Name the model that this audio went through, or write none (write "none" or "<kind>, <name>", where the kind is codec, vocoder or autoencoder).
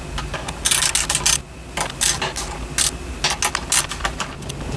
none